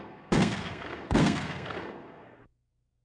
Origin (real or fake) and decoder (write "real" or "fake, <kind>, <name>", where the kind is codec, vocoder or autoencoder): fake, codec, SNAC